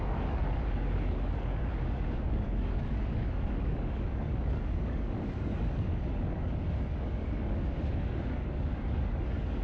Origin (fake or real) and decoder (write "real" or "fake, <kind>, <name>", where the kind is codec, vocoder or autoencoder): fake, codec, DAC